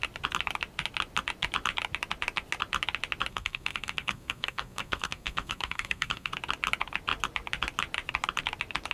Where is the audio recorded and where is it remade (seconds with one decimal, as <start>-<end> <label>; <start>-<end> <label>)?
0.0-3.3 recorded; 3.3-6.3 remade; 6.3-8.9 recorded